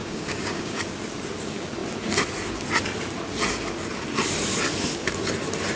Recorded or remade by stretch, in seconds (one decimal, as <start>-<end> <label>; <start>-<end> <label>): 0.0-0.8 remade; 0.8-5.8 recorded